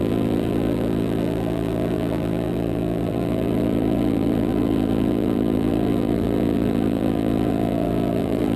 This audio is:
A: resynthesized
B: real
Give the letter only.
A